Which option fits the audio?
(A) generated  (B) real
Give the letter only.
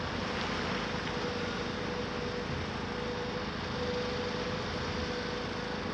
B